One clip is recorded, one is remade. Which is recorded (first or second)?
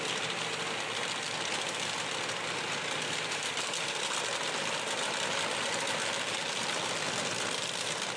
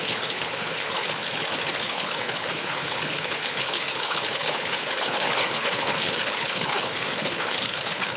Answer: first